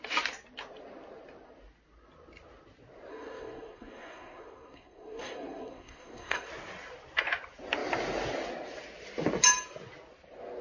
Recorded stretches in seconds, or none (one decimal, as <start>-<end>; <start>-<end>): 0.0-3.1; 6.5-10.6